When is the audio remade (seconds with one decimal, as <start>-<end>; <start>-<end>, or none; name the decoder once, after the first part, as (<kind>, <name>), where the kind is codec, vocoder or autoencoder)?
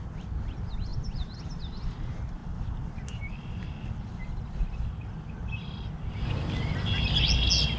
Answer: none